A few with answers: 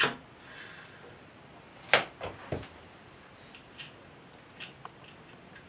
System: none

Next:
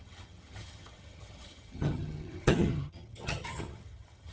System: vocoder, HiFi-GAN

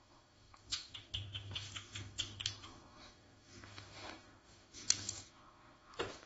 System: autoencoder, DAC-VAE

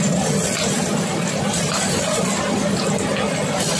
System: none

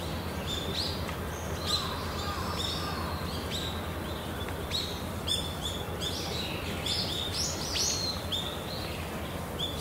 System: none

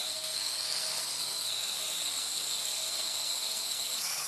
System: codec, SNAC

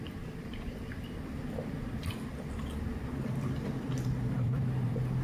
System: vocoder, BigVGAN v2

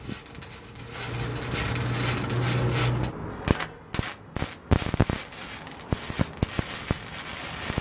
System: none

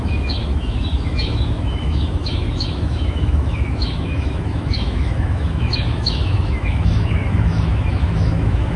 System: autoencoder, DAC-VAE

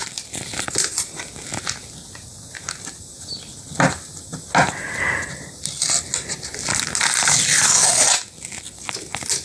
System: none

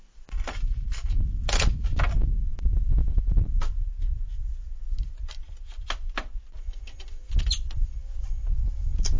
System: none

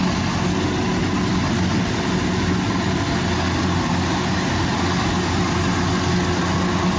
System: none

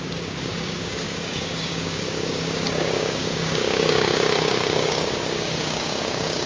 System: codec, DAC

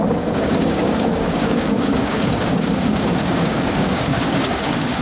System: codec, DAC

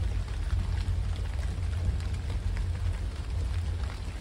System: none